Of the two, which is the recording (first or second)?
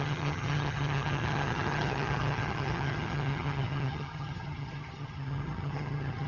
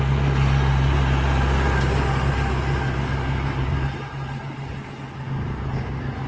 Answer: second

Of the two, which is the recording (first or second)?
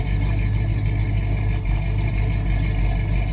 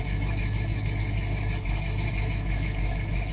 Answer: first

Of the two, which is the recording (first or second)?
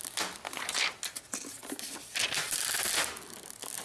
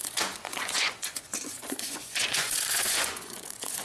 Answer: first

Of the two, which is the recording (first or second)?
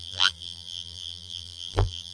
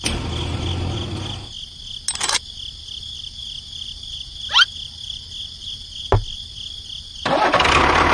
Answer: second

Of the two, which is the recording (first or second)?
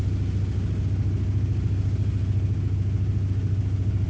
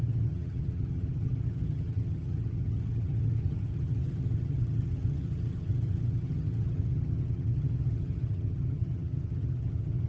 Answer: first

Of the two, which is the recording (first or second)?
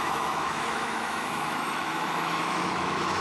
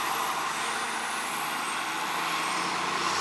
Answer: second